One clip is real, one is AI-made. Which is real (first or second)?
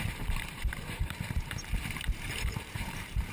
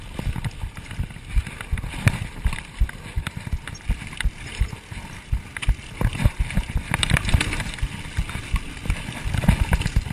second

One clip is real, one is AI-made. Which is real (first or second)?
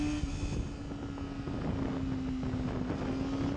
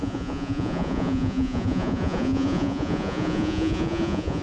first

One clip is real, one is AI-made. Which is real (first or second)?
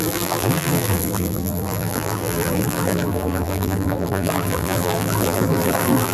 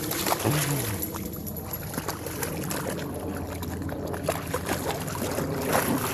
second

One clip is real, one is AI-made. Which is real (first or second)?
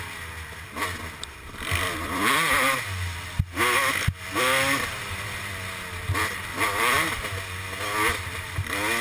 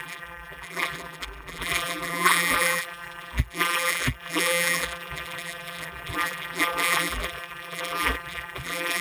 first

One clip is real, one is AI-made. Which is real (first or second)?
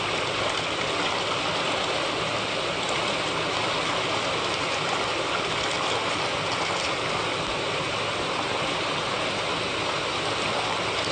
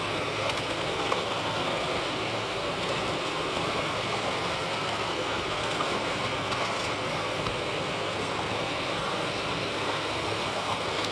first